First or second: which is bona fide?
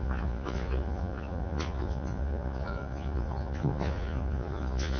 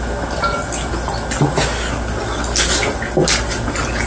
second